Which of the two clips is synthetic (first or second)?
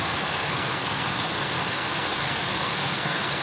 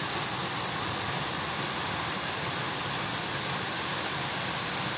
first